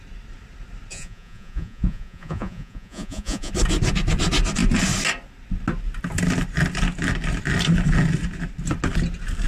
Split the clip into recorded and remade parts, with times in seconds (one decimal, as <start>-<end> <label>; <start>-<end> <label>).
0.0-0.9 recorded; 0.9-3.5 remade; 3.5-9.5 recorded

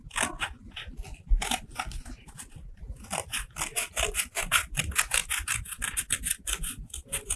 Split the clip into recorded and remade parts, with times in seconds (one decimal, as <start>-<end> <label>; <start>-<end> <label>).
0.0-7.4 recorded

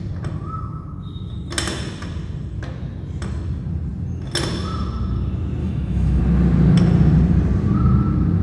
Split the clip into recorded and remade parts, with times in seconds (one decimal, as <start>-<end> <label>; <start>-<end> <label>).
0.0-5.6 recorded; 5.6-6.2 remade; 6.2-8.4 recorded

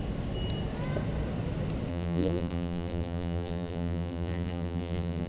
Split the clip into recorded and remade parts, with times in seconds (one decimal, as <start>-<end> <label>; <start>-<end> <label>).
0.0-1.9 recorded; 1.9-5.3 remade